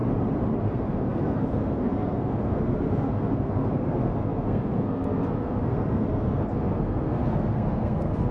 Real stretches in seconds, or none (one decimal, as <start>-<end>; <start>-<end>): 0.0-0.6